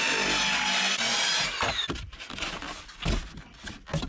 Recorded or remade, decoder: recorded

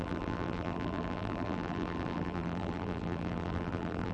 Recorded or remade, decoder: remade, vocoder, BigVGAN v2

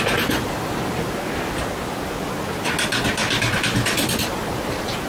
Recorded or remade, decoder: recorded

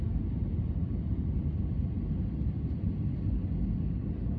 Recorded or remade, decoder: recorded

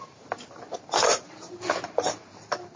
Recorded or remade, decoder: remade, vocoder, BigVGAN v2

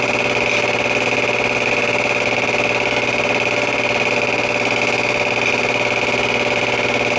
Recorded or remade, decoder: recorded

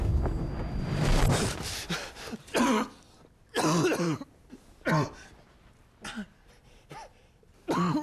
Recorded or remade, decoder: recorded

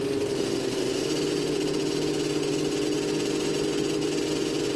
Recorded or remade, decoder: recorded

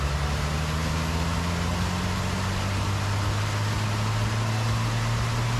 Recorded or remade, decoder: recorded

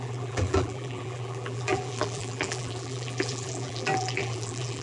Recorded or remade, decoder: remade, vocoder, BigVGAN v2